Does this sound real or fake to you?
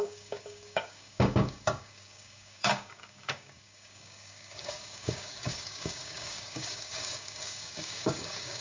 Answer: fake